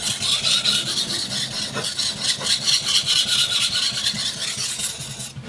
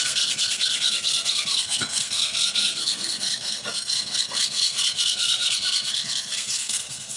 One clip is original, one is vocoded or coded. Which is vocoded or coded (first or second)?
second